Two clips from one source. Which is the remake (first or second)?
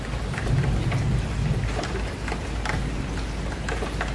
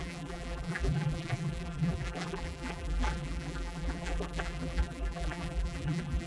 second